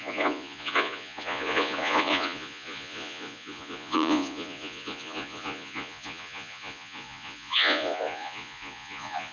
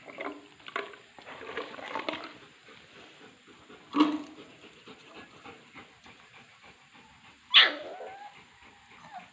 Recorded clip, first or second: second